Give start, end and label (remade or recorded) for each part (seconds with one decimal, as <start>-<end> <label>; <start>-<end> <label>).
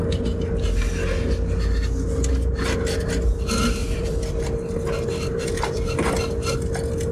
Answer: 0.0-3.8 recorded; 3.8-4.4 remade; 4.4-5.3 recorded; 5.3-6.2 remade; 6.2-7.1 recorded